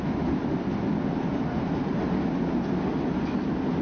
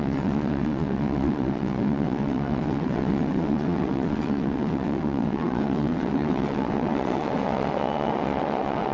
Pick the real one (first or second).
first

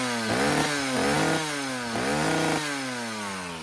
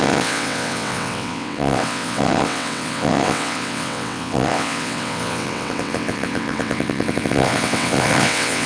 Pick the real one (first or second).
first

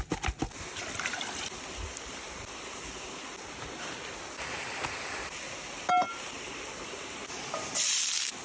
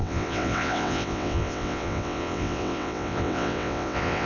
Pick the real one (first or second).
first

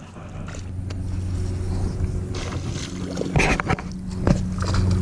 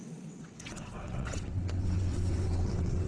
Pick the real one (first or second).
first